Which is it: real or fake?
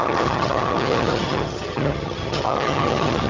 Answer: fake